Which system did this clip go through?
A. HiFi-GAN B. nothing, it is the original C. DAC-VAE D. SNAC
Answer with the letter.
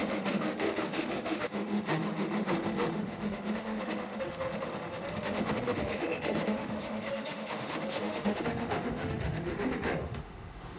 C